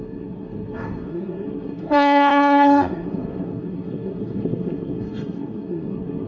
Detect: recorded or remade remade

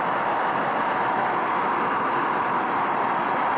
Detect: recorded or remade recorded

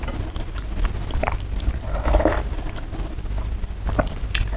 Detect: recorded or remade recorded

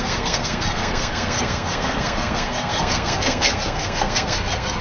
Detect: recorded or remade remade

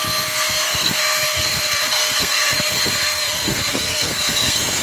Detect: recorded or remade remade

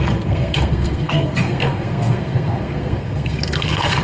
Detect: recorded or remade remade